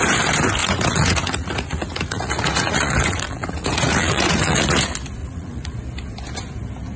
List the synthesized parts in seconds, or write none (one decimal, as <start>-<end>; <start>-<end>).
0.6-4.8; 5.2-5.8